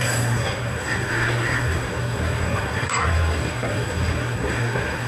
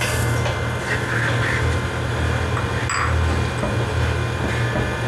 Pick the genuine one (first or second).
second